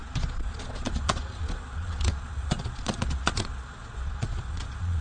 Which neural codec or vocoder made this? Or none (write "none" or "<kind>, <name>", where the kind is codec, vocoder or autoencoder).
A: vocoder, Vocos